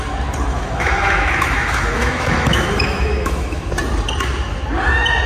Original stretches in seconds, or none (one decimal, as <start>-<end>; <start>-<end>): 0.0-0.5; 3.7-5.3